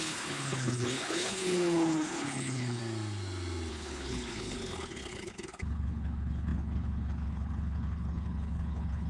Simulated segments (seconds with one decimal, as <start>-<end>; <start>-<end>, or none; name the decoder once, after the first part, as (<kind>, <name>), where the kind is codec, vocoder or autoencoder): 0.0-2.8 (codec, HILCodec); 3.7-9.1